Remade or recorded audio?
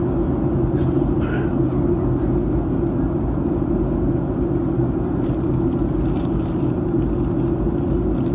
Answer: recorded